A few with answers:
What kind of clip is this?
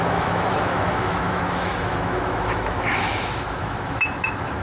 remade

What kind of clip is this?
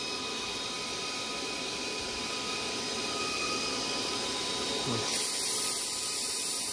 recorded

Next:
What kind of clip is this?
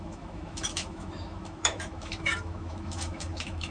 remade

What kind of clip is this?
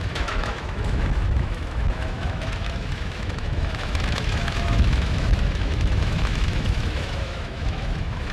remade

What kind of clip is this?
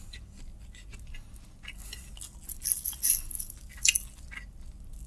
recorded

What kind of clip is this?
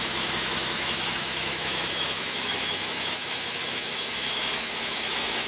remade